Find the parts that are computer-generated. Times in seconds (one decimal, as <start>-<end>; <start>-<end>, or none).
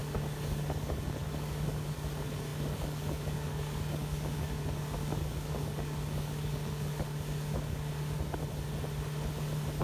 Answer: 0.0-8.4